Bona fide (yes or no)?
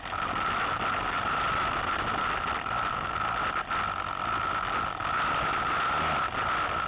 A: yes